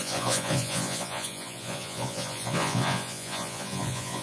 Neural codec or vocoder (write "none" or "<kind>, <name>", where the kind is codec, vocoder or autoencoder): vocoder, Vocos